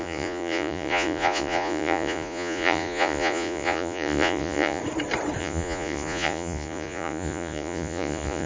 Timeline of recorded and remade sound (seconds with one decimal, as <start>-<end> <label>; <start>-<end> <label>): 0.0-4.8 remade; 4.8-5.4 recorded; 5.4-8.5 remade